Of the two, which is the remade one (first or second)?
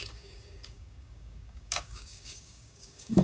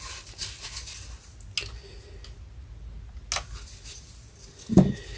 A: first